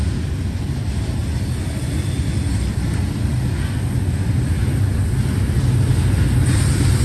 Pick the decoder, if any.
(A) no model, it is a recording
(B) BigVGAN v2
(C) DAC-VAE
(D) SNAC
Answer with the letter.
A